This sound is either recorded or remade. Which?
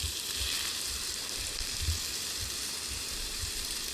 remade